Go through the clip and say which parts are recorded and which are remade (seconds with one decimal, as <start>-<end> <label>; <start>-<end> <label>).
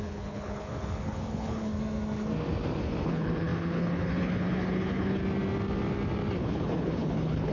0.0-1.7 remade; 1.7-2.8 recorded; 2.8-5.2 remade; 5.2-6.4 recorded; 6.4-7.5 remade